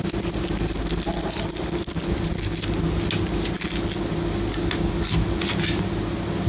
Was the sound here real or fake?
real